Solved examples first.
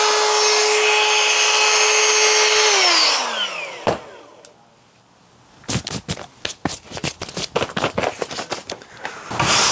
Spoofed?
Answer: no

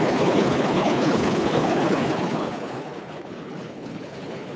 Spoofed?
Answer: yes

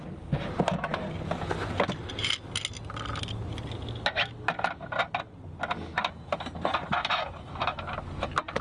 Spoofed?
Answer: no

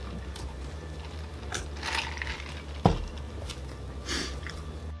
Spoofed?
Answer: no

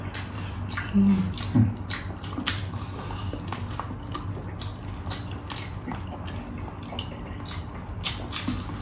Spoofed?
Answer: no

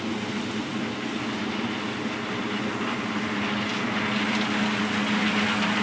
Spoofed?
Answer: no